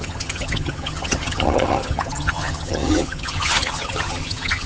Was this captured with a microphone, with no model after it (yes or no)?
no